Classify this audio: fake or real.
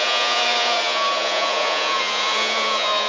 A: fake